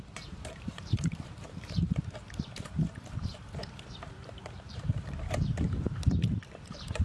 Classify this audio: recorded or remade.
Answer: remade